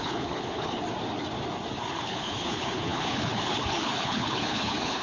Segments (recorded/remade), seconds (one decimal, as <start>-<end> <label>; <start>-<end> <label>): 0.0-0.8 remade; 0.8-1.9 recorded; 1.9-5.0 remade